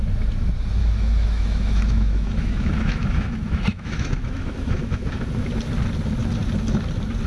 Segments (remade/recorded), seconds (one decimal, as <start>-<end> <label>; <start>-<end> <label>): 0.0-0.8 recorded; 0.8-5.2 remade; 5.2-7.3 recorded

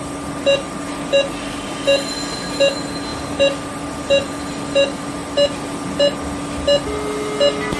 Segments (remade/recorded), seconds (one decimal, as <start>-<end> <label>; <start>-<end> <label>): 0.0-7.8 recorded

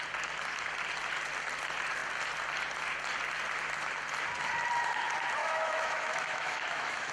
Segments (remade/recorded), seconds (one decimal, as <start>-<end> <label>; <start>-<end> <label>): 0.0-5.4 recorded; 5.4-7.1 remade